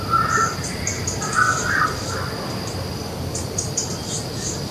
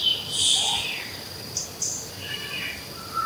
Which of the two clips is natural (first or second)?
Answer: first